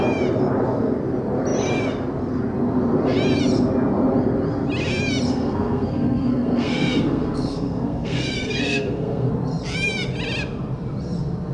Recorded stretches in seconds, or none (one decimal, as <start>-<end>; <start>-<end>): 0.0-5.3; 9.3-11.5